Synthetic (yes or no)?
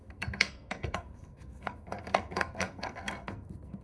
yes